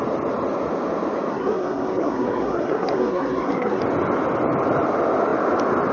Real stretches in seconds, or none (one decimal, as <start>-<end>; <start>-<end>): 0.0-1.3; 3.8-5.9